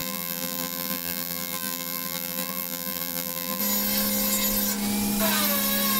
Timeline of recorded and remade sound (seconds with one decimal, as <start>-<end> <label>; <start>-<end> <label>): 0.0-3.6 remade; 3.6-6.0 recorded